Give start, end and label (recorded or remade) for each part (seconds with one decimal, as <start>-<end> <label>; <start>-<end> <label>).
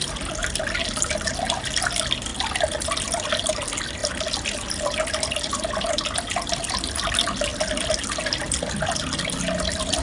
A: 0.0-10.0 recorded